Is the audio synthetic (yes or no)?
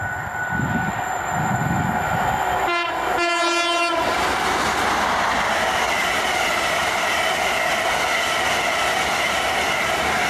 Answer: no